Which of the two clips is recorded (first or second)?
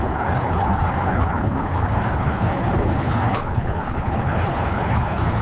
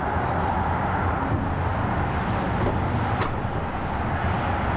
second